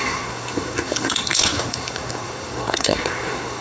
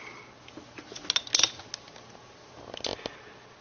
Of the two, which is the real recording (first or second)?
second